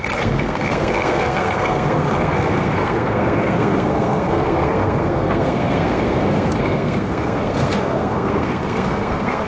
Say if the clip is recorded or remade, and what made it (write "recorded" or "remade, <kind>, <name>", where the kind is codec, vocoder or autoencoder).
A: remade, codec, SNAC